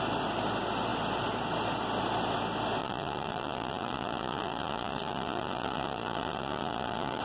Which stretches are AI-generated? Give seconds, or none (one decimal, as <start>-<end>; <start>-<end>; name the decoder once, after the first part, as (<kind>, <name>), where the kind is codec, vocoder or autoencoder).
2.8-7.2 (vocoder, Vocos)